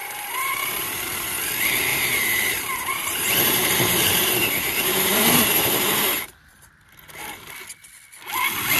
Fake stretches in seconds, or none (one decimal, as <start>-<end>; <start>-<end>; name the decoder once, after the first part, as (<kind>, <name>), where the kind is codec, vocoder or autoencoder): 0.0-1.4 (vocoder, BigVGAN v2); 1.9-6.7